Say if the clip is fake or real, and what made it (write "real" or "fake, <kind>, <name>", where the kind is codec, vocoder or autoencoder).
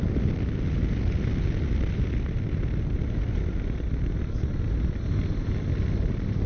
real